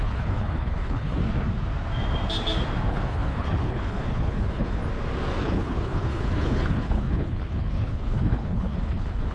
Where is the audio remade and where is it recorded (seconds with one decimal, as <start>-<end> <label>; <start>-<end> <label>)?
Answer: 0.0-1.2 remade; 1.2-2.9 recorded; 2.9-4.8 remade; 4.8-5.4 recorded; 5.4-9.3 remade